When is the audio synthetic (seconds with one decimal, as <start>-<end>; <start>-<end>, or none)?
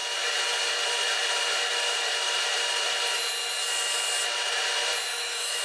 5.1-5.6